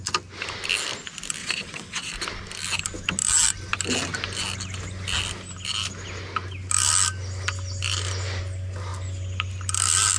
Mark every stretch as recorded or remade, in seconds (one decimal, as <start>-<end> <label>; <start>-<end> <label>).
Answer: 0.0-1.4 recorded; 1.4-2.1 remade; 2.1-10.2 recorded